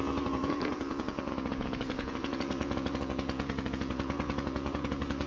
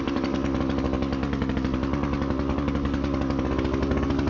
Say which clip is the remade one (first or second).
first